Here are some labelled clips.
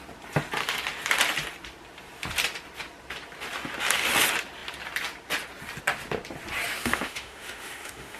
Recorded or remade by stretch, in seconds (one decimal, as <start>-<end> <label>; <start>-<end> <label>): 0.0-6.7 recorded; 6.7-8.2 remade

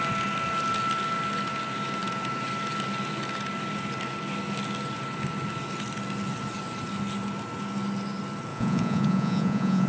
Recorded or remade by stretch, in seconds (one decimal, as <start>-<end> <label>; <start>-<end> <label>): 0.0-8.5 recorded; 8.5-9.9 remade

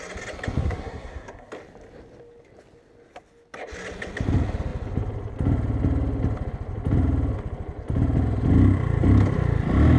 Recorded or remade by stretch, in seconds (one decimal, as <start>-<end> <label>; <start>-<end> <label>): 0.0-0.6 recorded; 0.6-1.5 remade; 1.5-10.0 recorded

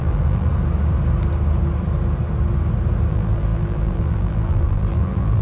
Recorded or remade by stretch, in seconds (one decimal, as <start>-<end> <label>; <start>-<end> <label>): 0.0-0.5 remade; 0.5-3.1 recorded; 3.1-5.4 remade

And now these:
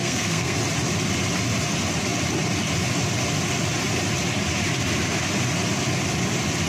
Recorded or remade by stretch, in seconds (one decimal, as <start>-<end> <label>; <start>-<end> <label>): 0.0-0.6 remade; 0.6-6.7 recorded

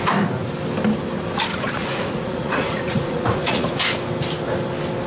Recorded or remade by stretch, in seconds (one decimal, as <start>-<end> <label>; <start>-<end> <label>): 0.0-1.5 recorded; 1.5-3.7 remade; 3.7-5.1 recorded

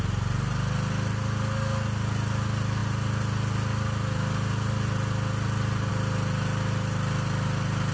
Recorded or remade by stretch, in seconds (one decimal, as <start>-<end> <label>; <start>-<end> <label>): 0.0-7.9 recorded